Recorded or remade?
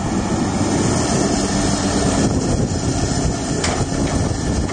recorded